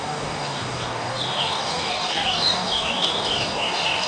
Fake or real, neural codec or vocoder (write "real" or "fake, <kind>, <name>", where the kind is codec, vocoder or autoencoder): fake, codec, DAC